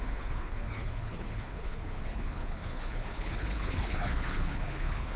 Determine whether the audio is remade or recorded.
remade